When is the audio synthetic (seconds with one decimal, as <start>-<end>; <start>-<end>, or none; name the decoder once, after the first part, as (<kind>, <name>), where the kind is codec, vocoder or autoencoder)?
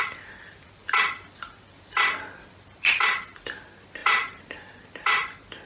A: 4.0-4.6 (vocoder, BigVGAN v2)